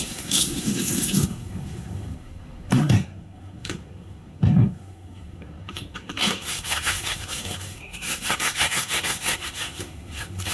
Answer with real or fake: fake